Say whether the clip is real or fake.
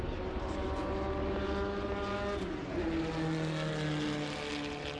real